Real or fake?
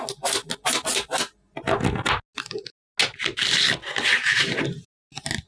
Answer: real